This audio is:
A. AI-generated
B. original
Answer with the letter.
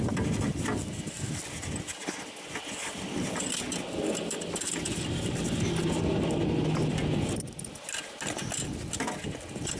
B